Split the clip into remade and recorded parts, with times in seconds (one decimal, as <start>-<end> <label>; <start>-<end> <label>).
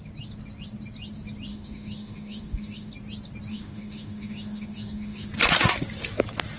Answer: 0.0-1.5 recorded; 1.5-2.9 remade; 2.9-3.5 recorded; 3.5-5.3 remade; 5.3-6.6 recorded